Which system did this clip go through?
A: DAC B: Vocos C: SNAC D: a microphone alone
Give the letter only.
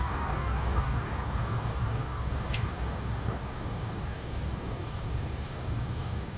A